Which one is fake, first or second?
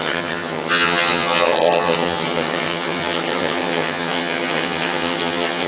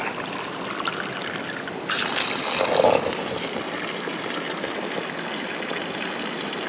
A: first